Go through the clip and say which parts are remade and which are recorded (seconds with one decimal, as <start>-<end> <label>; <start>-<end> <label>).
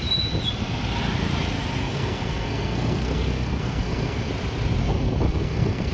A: 0.0-1.8 recorded; 1.8-4.3 remade; 4.3-4.8 recorded; 4.8-5.9 remade